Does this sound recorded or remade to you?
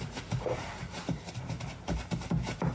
remade